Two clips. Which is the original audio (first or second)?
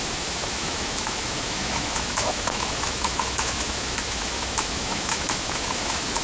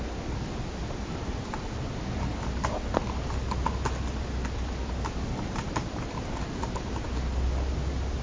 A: second